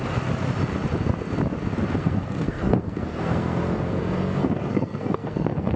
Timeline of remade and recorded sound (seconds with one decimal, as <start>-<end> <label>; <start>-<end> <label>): 0.0-2.0 recorded; 2.0-5.8 remade